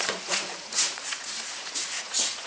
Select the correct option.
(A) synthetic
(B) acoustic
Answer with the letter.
A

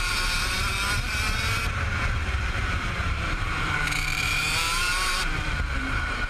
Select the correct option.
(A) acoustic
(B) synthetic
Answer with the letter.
B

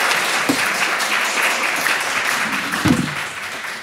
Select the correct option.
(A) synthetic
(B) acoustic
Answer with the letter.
A